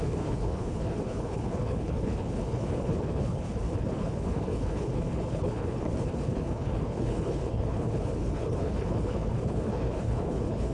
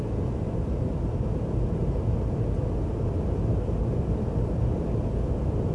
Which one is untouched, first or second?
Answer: second